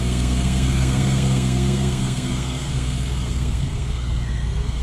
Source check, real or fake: fake